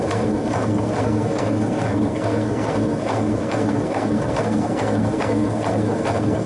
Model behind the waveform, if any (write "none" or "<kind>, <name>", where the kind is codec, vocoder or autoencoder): codec, SNAC